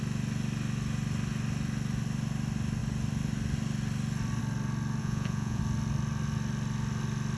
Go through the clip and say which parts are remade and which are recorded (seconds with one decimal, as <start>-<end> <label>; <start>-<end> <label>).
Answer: 0.0-5.0 recorded; 5.0-5.6 remade; 5.6-7.4 recorded